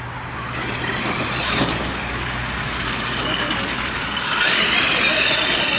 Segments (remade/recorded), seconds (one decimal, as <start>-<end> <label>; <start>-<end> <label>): 0.0-1.4 recorded; 1.4-4.6 remade; 4.6-5.8 recorded

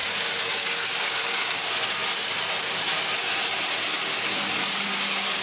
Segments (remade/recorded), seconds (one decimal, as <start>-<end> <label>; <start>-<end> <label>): 0.0-2.0 remade; 2.0-5.4 recorded

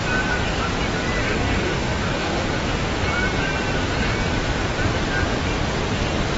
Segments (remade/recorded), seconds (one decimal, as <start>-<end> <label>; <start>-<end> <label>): 0.0-1.2 recorded; 1.2-2.5 remade; 2.5-6.4 recorded

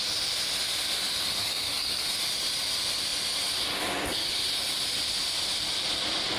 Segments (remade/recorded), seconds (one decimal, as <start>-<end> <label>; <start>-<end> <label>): 0.0-1.4 recorded; 1.4-2.0 remade; 2.0-6.4 recorded

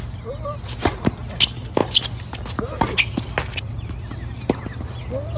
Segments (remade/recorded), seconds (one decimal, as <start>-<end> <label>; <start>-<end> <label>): 0.0-5.4 recorded

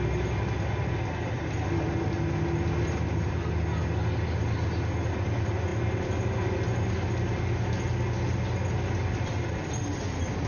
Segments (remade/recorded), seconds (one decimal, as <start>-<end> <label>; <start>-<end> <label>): 0.0-10.5 recorded